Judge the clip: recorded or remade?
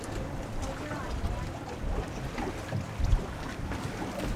recorded